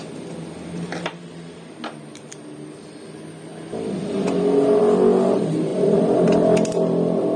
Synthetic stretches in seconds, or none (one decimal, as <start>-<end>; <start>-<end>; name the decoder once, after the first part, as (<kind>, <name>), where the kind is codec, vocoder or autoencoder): none